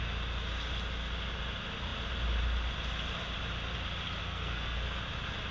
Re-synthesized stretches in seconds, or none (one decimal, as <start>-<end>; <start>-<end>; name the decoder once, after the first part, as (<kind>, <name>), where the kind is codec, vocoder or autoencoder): 4.2-5.0 (codec, SNAC)